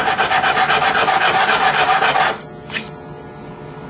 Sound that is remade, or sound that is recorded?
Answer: recorded